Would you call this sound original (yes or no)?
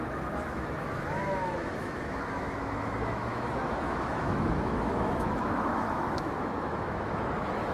no